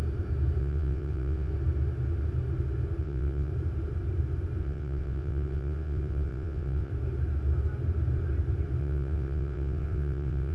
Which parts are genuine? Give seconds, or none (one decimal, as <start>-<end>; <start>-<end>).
0.0-0.6; 1.5-3.0; 3.5-4.6; 6.9-8.8